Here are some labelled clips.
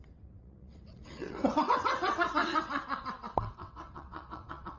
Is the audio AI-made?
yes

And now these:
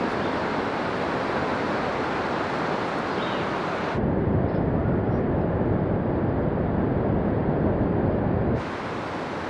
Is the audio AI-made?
no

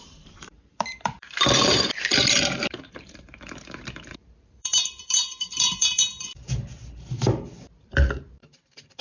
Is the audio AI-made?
yes